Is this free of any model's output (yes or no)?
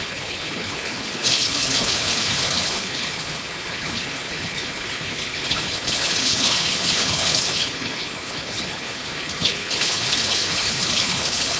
no